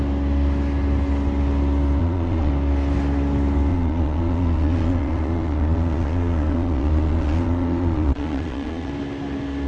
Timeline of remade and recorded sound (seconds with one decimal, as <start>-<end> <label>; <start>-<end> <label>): 0.0-2.0 recorded; 2.0-2.5 remade; 2.5-3.7 recorded; 3.7-8.9 remade; 8.9-9.7 recorded